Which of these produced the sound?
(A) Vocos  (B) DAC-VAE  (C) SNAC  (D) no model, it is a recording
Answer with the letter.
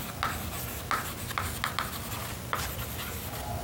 D